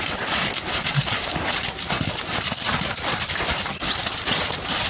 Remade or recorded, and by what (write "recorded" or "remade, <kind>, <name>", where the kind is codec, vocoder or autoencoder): recorded